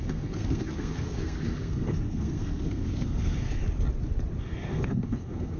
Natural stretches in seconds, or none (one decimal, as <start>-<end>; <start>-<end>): 3.6-4.4